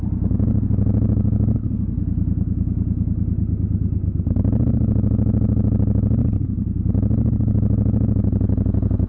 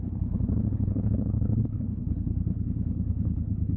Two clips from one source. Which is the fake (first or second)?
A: second